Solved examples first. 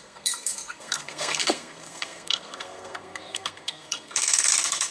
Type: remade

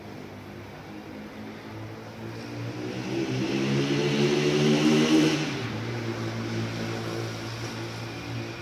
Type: recorded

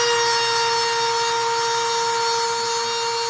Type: recorded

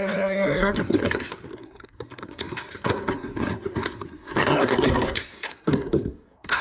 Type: remade